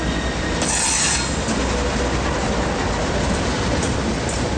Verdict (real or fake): real